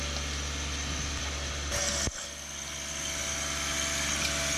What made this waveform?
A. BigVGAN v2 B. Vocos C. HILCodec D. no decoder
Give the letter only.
D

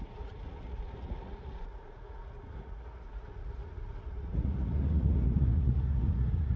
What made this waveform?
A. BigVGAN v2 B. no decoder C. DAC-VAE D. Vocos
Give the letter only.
D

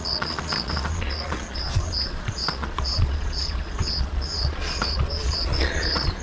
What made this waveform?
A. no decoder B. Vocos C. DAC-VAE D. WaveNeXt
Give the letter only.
B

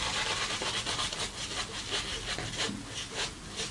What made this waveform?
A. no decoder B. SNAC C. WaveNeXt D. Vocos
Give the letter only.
A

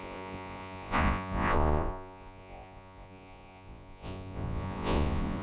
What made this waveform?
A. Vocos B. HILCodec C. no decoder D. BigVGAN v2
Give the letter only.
A